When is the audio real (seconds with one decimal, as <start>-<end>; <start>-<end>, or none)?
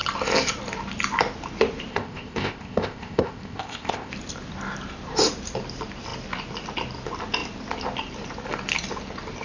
0.0-1.9; 4.1-9.4